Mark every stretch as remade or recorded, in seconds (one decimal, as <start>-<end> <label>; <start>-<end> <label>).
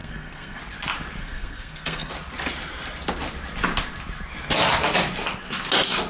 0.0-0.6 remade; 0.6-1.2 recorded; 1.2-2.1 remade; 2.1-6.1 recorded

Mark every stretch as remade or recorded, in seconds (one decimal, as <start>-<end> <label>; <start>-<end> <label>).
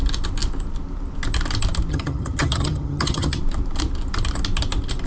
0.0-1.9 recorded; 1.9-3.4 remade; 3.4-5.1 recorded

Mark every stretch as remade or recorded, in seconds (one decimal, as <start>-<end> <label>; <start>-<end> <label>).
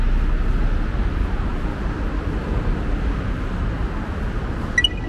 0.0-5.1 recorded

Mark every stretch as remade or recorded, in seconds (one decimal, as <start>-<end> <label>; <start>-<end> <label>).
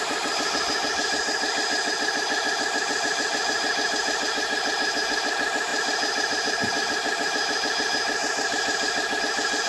0.0-9.7 recorded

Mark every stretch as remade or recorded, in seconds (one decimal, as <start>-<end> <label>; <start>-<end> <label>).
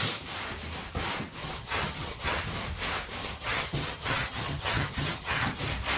0.0-1.4 recorded; 1.4-2.4 remade; 2.4-3.2 recorded; 3.2-5.6 remade; 5.6-6.0 recorded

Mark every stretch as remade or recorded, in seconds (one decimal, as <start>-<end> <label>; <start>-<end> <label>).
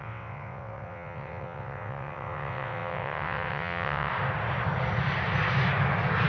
0.0-4.1 remade; 4.1-6.3 recorded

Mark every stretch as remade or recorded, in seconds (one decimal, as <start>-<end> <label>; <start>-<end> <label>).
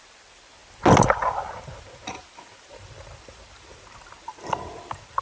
0.0-0.6 remade; 0.6-2.7 recorded; 2.7-5.2 remade